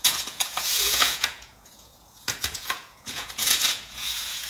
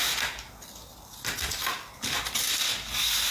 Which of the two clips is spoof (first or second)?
first